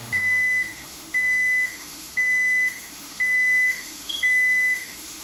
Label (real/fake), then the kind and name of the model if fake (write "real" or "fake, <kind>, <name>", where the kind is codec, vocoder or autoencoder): fake, autoencoder, DAC-VAE